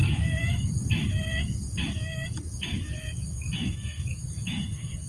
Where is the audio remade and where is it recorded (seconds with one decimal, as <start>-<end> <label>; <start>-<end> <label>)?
0.0-5.1 remade